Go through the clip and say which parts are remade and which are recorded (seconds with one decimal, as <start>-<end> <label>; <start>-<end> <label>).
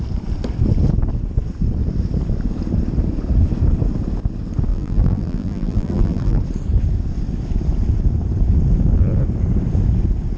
0.0-4.7 recorded; 4.7-6.4 remade; 6.4-10.4 recorded